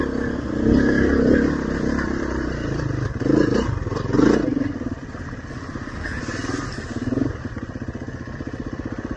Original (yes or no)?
yes